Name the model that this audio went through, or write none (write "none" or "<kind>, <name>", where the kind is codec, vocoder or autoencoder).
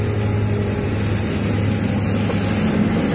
none